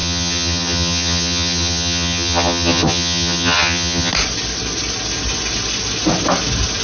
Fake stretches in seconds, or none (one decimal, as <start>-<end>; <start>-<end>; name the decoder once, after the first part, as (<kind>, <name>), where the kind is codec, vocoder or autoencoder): 0.0-4.1 (vocoder, HiFi-GAN)